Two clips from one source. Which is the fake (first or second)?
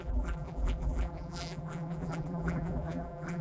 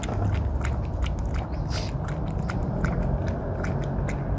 first